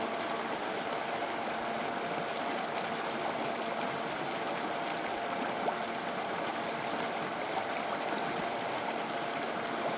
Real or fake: real